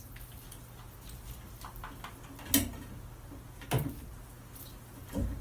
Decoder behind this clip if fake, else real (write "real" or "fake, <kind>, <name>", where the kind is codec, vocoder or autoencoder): real